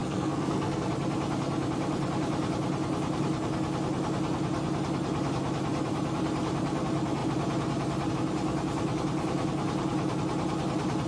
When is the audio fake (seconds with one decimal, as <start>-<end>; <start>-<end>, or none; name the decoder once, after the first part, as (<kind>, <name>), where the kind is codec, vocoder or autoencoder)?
0.0-0.9 (codec, SNAC)